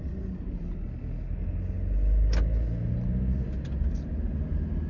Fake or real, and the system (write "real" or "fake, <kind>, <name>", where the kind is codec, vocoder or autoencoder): real